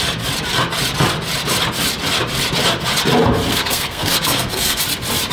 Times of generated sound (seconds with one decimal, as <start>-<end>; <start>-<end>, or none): 3.5-4.8